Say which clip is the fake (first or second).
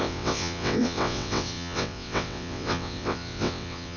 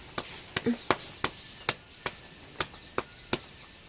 first